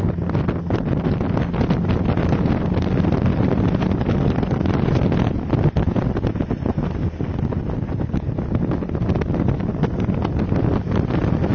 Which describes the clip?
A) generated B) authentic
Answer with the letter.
B